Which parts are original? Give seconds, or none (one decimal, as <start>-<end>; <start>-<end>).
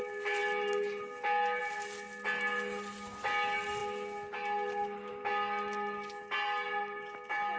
0.0-7.6